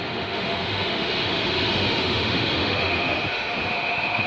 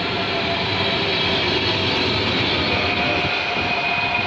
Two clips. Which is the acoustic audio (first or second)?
second